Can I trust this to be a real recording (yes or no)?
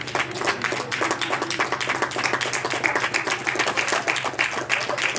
yes